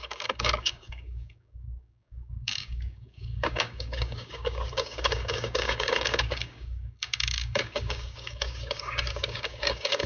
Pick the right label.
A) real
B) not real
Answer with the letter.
B